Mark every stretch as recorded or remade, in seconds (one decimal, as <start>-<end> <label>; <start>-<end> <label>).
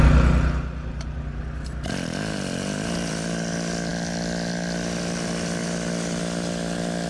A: 0.0-0.9 recorded; 0.9-1.4 remade; 1.4-7.1 recorded